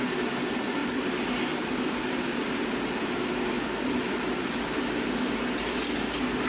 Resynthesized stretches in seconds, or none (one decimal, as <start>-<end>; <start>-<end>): 0.8-4.7